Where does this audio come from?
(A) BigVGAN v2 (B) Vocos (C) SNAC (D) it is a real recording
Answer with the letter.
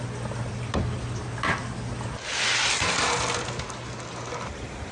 D